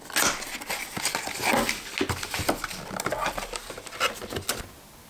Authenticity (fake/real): real